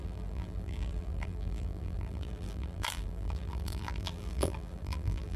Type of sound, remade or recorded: remade